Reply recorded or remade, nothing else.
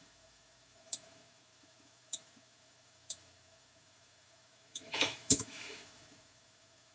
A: remade